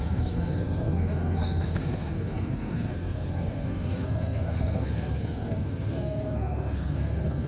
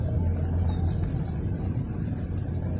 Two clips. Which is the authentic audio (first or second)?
second